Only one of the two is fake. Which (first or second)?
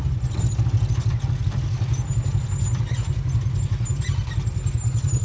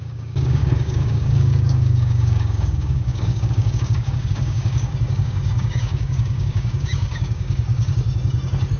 second